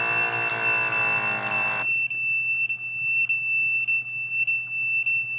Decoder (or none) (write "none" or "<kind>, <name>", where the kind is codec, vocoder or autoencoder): none